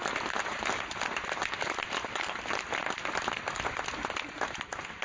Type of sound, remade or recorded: recorded